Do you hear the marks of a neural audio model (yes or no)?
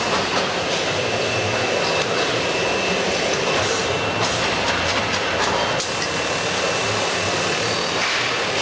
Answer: no